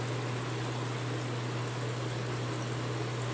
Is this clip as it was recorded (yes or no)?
yes